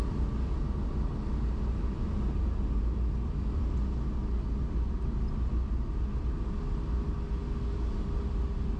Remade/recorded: recorded